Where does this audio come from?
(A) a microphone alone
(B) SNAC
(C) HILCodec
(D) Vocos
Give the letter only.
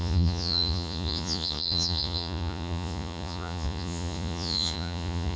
D